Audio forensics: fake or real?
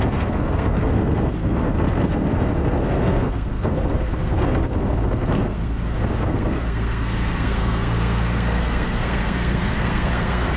fake